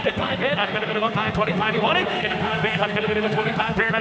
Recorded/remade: remade